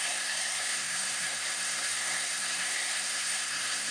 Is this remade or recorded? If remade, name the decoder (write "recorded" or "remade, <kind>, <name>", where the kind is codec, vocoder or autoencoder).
remade, codec, SNAC